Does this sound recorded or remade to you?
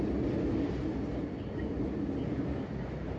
recorded